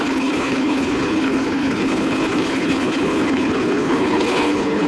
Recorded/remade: remade